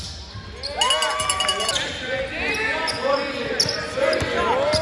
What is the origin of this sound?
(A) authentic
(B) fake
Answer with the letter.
A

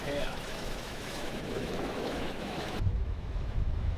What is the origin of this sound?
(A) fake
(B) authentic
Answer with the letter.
A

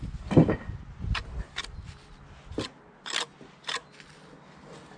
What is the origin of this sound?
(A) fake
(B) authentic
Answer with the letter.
B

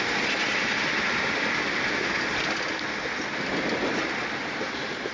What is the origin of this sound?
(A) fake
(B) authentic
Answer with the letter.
B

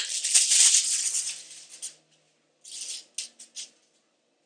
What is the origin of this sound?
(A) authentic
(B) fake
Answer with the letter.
A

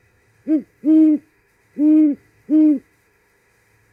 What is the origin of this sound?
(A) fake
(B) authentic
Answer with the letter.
A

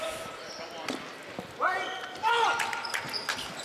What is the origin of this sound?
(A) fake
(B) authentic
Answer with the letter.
B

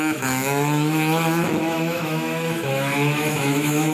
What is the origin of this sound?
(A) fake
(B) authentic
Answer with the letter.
A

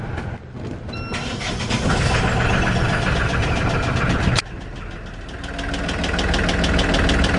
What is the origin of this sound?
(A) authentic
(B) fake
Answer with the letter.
A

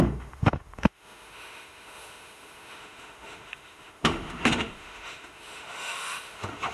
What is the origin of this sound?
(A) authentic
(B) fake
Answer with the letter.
B